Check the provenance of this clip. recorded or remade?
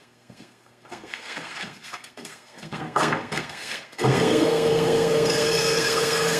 remade